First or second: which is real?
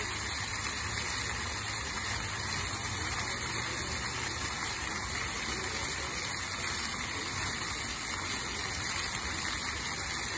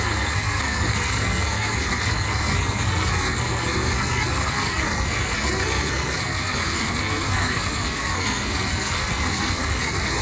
first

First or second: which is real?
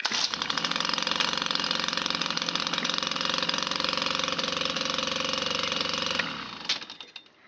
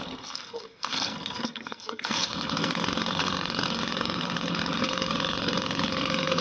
first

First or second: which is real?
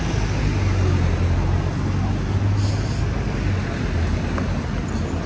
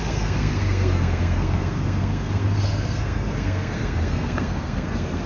first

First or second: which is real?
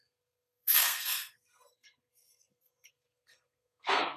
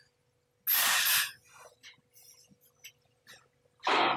second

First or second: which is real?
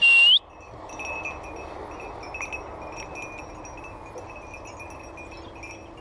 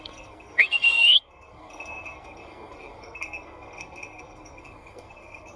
first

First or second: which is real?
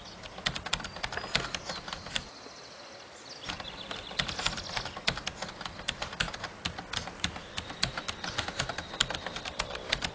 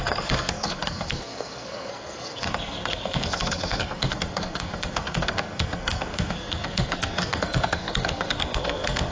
first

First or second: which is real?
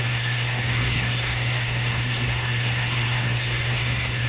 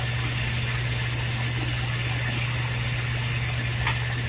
second